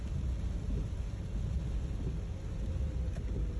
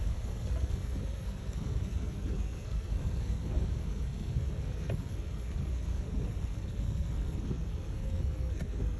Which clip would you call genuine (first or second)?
first